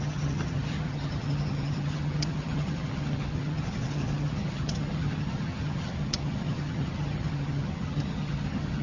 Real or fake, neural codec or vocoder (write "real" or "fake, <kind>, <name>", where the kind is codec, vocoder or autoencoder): fake, vocoder, HiFi-GAN